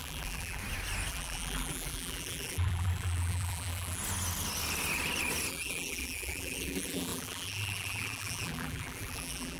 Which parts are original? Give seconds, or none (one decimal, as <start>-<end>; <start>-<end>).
0.6-1.1; 4.0-5.5